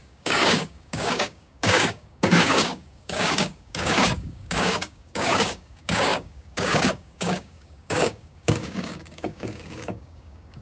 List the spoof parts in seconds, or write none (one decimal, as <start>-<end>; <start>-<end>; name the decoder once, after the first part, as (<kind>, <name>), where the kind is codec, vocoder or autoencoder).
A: 0.0-10.6 (codec, DAC)